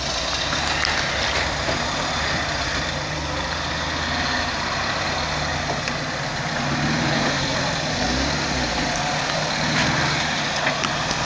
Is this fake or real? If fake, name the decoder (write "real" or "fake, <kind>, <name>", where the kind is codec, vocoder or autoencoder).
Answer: real